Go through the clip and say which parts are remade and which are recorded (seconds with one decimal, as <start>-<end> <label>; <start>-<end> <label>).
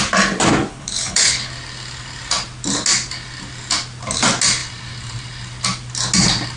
0.0-0.7 recorded; 0.7-1.5 remade; 1.5-6.6 recorded